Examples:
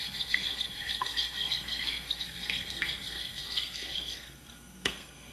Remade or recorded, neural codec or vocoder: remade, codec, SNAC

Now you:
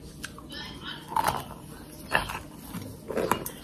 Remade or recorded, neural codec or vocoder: recorded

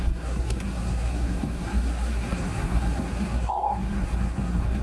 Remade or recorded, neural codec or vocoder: remade, codec, SNAC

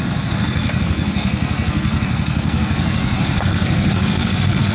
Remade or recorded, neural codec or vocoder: remade, codec, SNAC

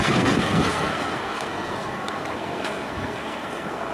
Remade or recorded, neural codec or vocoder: remade, codec, SNAC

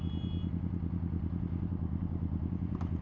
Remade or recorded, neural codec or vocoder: recorded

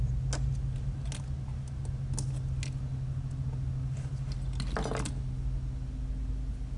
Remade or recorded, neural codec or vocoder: recorded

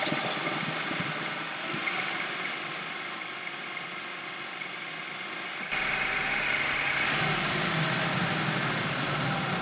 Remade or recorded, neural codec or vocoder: recorded